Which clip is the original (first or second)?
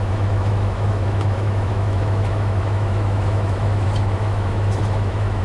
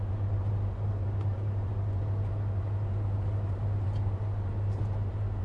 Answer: second